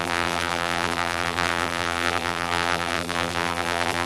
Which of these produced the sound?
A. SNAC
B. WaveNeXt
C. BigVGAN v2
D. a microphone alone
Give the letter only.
C